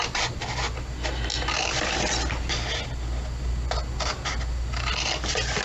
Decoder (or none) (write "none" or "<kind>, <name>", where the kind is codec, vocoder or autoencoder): none